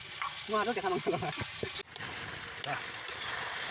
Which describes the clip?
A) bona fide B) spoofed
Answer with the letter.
A